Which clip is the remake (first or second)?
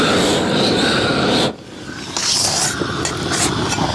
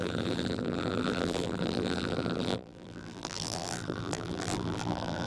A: second